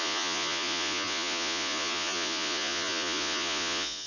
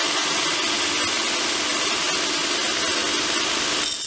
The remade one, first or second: first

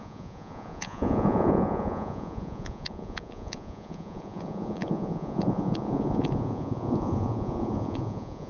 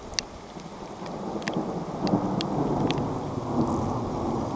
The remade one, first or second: first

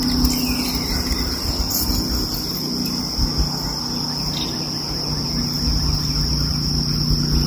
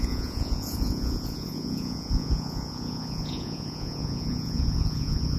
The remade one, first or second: second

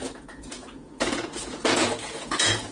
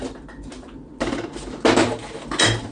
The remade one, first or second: first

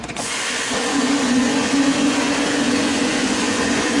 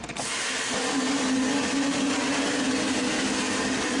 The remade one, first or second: first